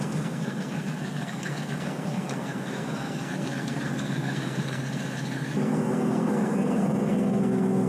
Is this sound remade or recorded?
remade